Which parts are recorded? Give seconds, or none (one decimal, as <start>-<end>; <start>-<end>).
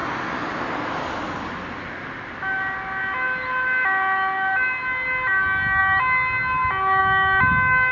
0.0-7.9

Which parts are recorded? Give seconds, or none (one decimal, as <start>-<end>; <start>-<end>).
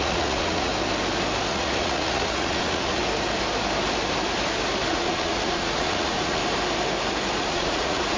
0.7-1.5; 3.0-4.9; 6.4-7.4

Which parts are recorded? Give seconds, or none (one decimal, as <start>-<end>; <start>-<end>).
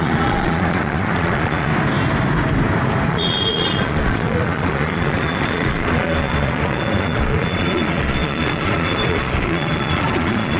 1.7-3.1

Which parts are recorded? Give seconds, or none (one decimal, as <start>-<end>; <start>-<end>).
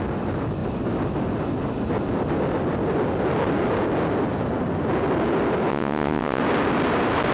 0.0-5.7; 6.4-7.3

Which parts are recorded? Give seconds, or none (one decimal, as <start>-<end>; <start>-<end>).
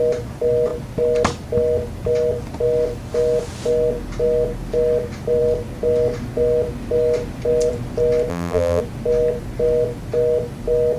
0.0-8.3; 8.8-11.0